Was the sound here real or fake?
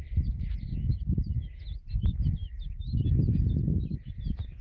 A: real